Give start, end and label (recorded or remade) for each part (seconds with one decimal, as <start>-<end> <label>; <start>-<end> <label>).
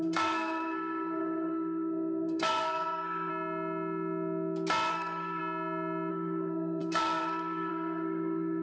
0.0-3.3 remade; 3.3-4.9 recorded; 4.9-5.4 remade; 5.4-6.1 recorded; 6.1-8.6 remade